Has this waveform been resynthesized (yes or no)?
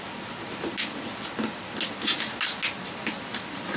no